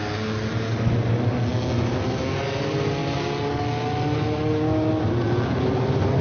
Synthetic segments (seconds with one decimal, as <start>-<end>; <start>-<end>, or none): none